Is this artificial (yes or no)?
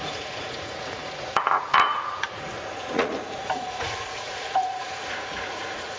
yes